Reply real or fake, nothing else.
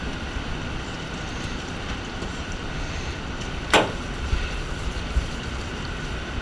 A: fake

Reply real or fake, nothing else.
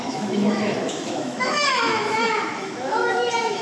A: fake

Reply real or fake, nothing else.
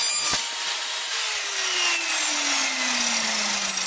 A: real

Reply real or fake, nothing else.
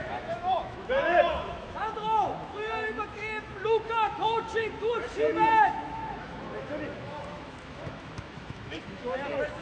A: fake